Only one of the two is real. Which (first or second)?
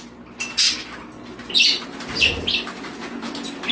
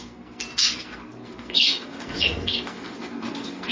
first